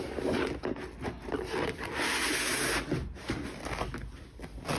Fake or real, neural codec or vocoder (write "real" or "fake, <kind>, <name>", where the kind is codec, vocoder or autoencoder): real